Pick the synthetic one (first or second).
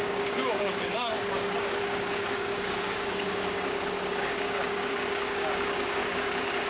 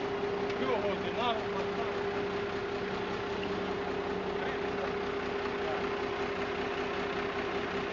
first